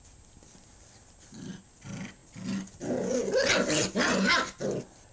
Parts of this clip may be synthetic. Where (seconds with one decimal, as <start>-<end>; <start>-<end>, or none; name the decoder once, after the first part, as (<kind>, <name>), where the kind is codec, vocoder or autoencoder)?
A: none